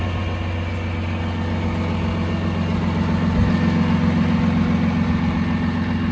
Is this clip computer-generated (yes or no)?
no